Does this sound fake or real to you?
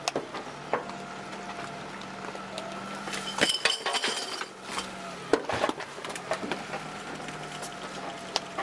real